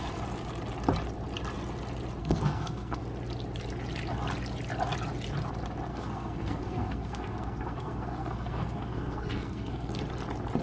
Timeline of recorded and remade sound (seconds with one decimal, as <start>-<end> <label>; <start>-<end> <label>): 0.0-2.2 recorded; 2.2-3.0 remade; 3.0-5.9 recorded; 5.9-10.0 remade; 10.0-10.6 recorded